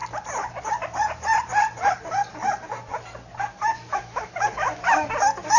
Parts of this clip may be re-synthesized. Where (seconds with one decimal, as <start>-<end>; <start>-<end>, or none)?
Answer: 3.9-5.1

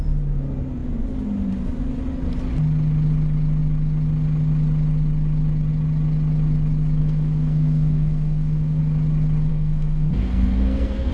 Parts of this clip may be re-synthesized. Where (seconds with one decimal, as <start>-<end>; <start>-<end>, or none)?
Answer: 7.0-8.8; 9.5-11.1

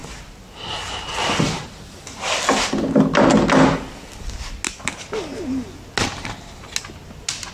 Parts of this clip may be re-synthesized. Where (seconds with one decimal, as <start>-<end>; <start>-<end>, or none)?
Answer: none

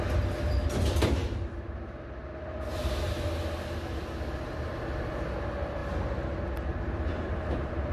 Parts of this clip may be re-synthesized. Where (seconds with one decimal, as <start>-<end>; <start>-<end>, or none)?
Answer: none

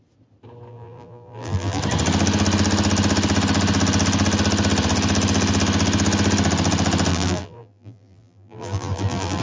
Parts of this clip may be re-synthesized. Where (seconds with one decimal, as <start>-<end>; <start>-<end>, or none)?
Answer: 0.7-1.8; 7.1-9.4